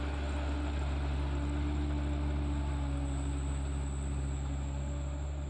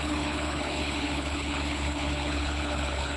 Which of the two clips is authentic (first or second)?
first